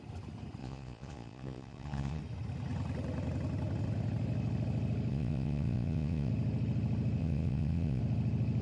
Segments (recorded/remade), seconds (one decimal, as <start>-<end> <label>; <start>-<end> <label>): 0.0-0.6 recorded; 0.6-2.2 remade; 2.2-5.1 recorded; 5.1-6.3 remade; 6.3-7.2 recorded; 7.2-8.0 remade; 8.0-8.6 recorded